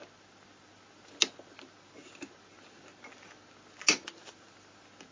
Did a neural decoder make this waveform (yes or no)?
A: no